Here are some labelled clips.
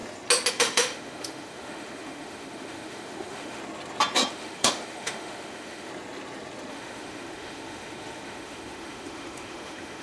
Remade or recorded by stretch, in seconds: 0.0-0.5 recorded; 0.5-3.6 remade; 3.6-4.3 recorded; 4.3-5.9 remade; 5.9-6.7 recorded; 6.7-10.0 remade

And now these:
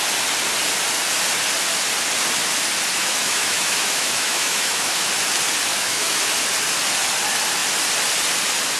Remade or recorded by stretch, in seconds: 0.0-3.0 recorded; 3.0-5.1 remade; 5.1-5.7 recorded; 5.7-6.2 remade; 6.2-8.8 recorded

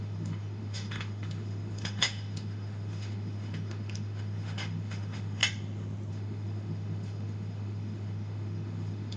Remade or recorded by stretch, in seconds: 0.0-5.4 remade; 5.4-6.1 recorded; 6.1-9.2 remade

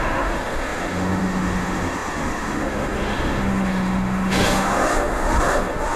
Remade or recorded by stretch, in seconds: 0.0-6.0 remade

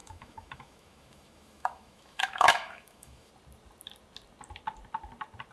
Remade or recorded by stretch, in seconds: 0.0-3.3 remade; 3.3-5.5 recorded

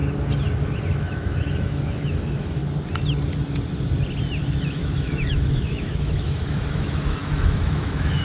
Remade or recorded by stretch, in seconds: 0.0-0.9 recorded; 0.9-2.6 remade; 2.6-4.6 recorded; 4.6-8.2 remade

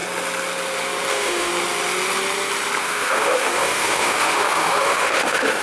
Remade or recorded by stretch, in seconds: 0.0-1.1 recorded; 1.1-1.5 remade; 1.5-2.8 recorded; 2.8-5.6 remade